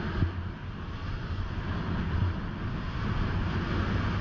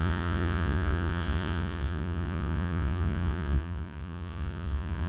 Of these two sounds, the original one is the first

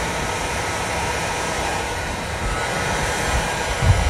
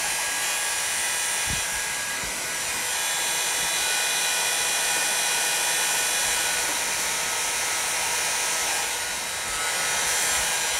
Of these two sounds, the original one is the second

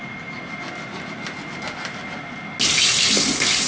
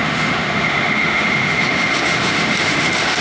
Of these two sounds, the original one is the first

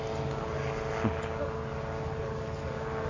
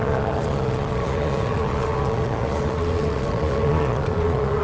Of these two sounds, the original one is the first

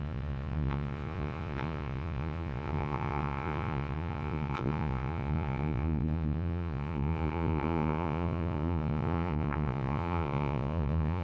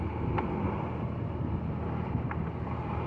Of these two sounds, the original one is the second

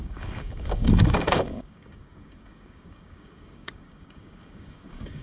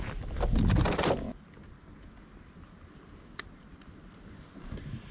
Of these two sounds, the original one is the second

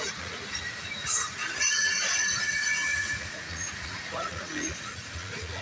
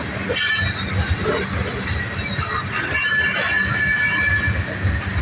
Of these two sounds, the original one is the second